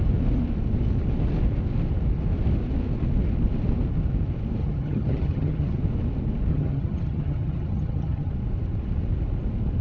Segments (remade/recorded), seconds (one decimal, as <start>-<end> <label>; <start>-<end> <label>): 0.0-4.6 recorded; 4.6-5.8 remade; 5.8-6.5 recorded; 6.5-8.3 remade; 8.3-9.8 recorded